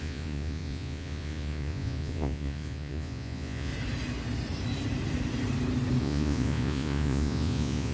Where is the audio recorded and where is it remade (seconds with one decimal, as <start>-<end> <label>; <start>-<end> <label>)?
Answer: 0.0-3.7 remade; 3.7-6.0 recorded; 6.0-7.9 remade